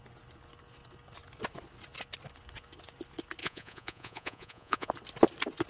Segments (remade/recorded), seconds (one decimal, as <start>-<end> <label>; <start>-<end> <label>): 0.0-3.4 recorded; 3.4-4.9 remade; 4.9-5.7 recorded